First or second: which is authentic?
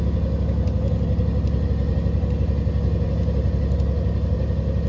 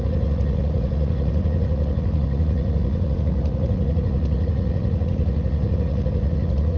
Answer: first